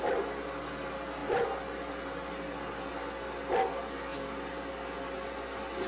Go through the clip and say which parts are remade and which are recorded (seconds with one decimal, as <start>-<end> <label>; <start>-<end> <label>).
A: 0.0-5.9 recorded